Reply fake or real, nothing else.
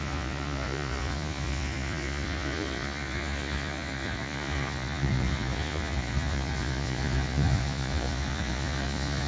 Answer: fake